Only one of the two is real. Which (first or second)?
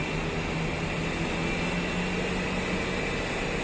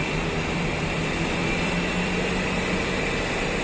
first